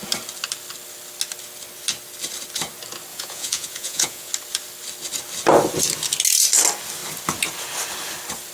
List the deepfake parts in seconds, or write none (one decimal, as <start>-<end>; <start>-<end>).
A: 3.1-4.3